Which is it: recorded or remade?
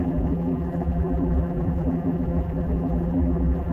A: remade